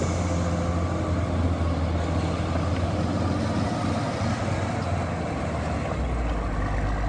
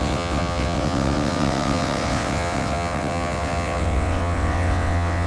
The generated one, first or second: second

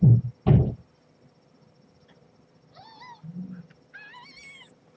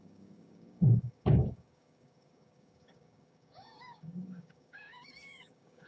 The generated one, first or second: second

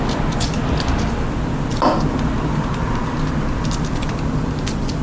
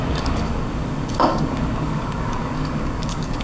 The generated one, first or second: second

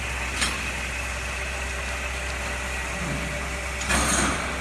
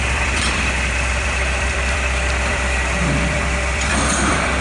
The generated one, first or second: second